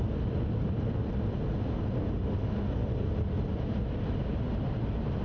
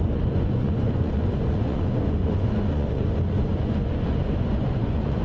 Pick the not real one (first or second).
second